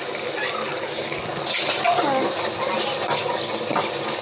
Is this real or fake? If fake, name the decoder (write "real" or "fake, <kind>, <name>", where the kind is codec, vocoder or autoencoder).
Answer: real